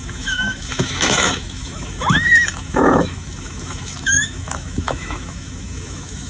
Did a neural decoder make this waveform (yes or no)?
yes